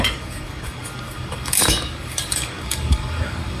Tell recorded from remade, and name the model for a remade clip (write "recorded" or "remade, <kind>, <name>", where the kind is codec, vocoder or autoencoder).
remade, codec, DAC